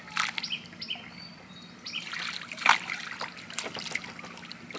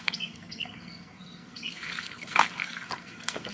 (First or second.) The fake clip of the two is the second